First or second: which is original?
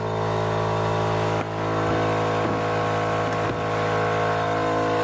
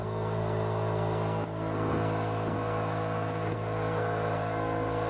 first